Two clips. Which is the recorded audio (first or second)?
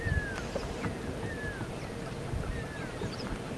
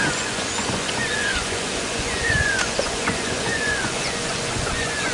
first